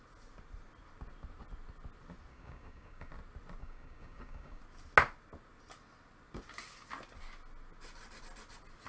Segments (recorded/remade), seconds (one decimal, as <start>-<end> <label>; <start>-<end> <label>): 0.0-2.3 recorded; 2.3-3.1 remade; 3.1-3.6 recorded; 3.6-4.6 remade; 4.6-8.9 recorded